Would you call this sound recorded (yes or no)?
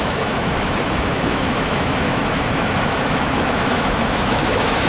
no